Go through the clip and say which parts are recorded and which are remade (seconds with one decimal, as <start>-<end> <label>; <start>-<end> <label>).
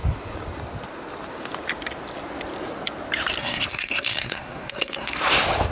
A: 0.0-3.4 recorded; 3.4-5.2 remade; 5.2-5.7 recorded